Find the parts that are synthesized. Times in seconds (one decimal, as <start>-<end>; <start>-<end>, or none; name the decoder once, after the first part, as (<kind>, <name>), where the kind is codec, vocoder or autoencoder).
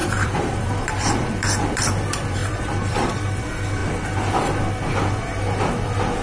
0.0-3.8 (vocoder, BigVGAN v2); 5.2-6.2